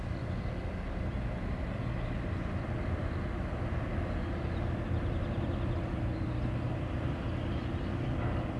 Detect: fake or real real